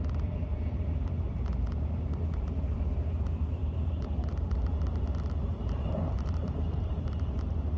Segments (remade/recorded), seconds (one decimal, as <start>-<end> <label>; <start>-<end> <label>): 0.0-7.8 remade